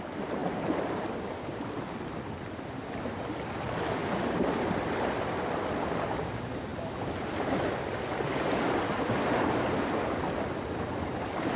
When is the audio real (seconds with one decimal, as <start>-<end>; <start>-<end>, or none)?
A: 0.0-11.6